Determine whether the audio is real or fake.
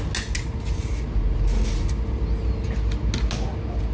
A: real